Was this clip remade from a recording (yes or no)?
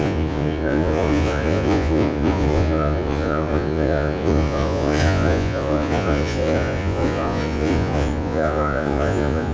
yes